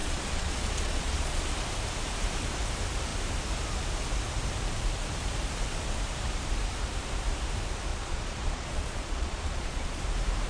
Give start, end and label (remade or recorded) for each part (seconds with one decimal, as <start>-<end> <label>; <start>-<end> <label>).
0.0-1.4 remade; 1.4-7.9 recorded; 7.9-10.0 remade; 10.0-10.5 recorded

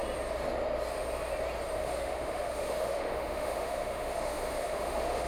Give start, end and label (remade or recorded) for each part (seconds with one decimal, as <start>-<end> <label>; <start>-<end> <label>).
0.0-1.8 recorded; 1.8-5.3 remade